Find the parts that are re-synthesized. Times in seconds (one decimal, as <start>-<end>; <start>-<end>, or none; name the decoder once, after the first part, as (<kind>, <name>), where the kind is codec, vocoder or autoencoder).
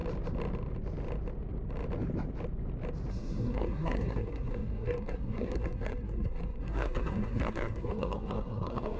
3.1-9.0 (codec, SNAC)